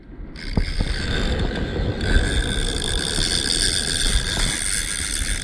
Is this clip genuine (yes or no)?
yes